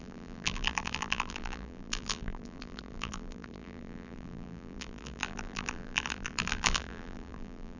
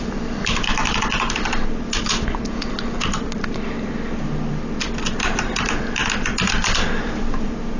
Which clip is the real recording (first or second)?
second